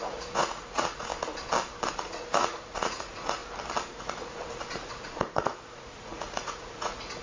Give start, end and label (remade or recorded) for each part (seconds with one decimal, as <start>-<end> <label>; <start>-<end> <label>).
0.0-1.1 remade; 1.1-1.9 recorded; 1.9-3.4 remade; 3.4-3.9 recorded; 3.9-7.2 remade